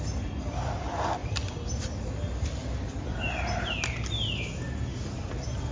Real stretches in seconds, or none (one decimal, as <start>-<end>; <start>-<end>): 0.0-5.7